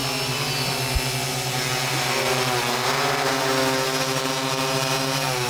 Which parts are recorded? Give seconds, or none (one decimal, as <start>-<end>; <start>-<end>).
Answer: 0.0-5.5